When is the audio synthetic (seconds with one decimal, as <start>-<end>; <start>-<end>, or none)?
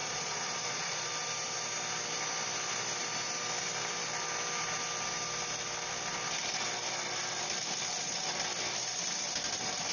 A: 0.0-1.1